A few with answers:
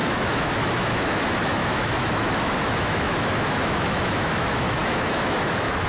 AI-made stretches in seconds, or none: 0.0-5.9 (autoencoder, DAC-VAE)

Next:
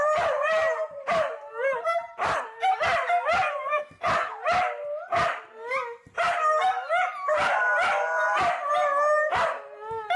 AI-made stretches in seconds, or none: 0.0-2.8 (vocoder, BigVGAN v2)